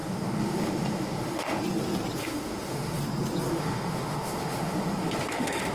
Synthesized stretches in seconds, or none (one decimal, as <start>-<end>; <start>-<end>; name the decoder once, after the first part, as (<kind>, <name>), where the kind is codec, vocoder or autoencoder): 0.0-1.6 (autoencoder, DAC-VAE); 2.2-3.0; 3.5-5.7